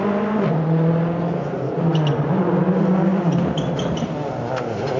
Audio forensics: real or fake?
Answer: real